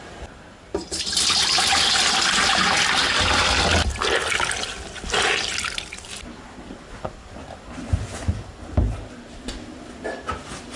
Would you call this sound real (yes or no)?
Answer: yes